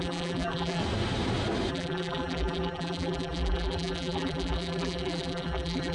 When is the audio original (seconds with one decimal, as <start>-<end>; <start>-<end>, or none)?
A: 0.8-1.7